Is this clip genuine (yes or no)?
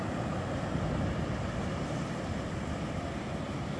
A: no